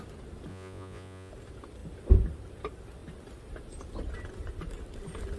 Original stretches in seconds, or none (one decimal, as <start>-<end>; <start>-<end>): 0.0-0.5; 1.3-5.4